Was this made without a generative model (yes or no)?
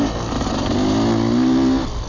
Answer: yes